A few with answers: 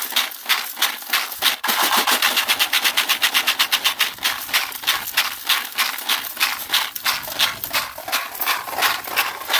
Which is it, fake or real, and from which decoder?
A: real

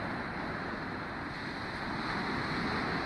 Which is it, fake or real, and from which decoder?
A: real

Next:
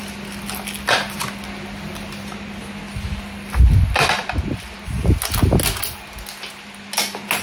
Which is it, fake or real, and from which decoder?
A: real